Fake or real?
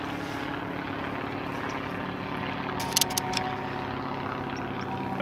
real